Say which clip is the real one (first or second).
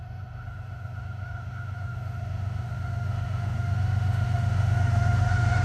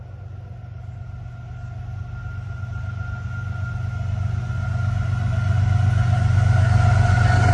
second